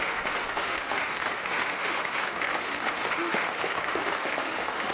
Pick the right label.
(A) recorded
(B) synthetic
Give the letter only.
B